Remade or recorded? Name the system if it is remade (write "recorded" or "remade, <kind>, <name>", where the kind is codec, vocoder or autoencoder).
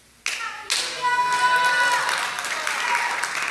recorded